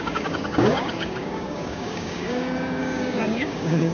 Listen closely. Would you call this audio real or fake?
fake